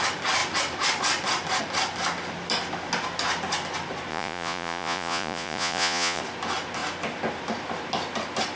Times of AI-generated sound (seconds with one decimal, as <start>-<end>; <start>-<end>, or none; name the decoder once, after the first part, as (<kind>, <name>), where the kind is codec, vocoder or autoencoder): 4.1-6.2 (vocoder, Vocos)